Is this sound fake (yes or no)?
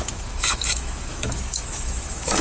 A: yes